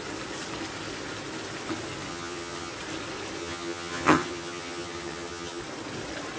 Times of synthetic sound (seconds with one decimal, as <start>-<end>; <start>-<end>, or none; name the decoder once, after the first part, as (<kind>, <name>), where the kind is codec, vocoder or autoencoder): 2.1-2.7 (vocoder, HiFi-GAN); 3.4-5.6

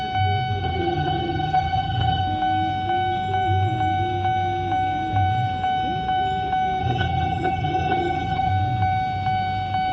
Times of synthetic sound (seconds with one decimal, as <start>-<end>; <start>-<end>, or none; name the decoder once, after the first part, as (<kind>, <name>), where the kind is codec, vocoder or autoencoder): 0.6-2.2 (vocoder, HiFi-GAN); 6.8-8.5

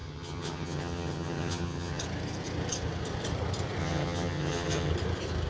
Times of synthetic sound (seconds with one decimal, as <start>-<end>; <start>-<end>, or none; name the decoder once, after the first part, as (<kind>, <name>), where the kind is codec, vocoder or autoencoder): 0.0-2.0 (vocoder, HiFi-GAN); 3.8-4.9